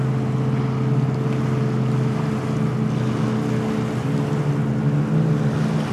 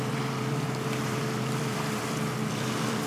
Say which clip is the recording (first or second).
first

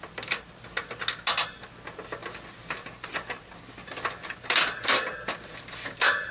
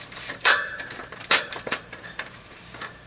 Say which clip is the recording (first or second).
first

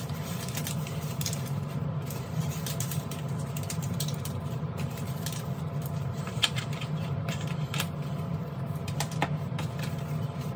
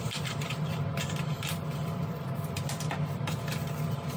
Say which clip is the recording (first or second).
second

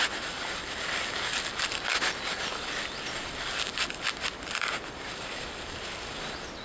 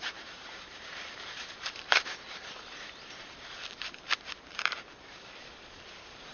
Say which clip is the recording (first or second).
first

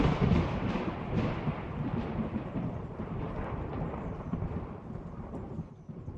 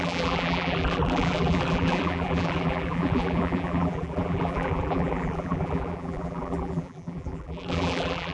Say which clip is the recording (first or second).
first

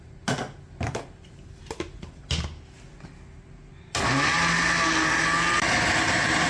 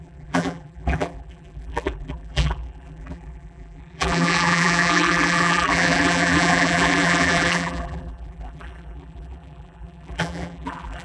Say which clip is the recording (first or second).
first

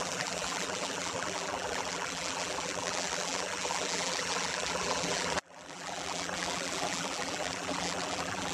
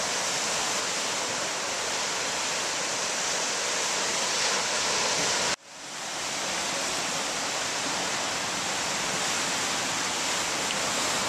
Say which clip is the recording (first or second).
second